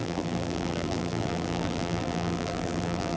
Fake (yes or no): yes